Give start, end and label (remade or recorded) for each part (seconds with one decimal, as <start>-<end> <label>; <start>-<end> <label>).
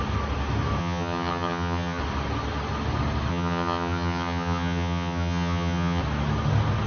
0.0-0.8 recorded; 0.8-2.0 remade; 2.0-3.3 recorded; 3.3-6.0 remade; 6.0-6.9 recorded